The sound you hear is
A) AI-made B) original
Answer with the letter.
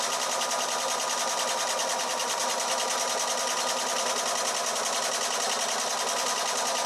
B